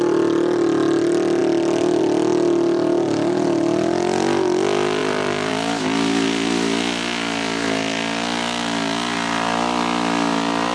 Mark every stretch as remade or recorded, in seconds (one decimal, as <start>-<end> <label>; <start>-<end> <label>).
0.0-5.0 recorded; 5.0-5.5 remade; 5.5-10.7 recorded